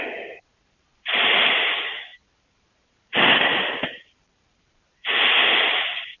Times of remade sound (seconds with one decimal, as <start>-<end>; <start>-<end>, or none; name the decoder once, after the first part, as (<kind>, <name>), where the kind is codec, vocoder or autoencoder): 0.5-1.5 (vocoder, BigVGAN v2); 2.1-4.8